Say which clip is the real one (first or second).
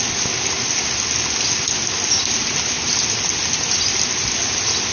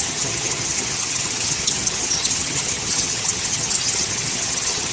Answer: first